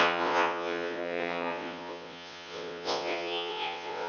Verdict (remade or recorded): remade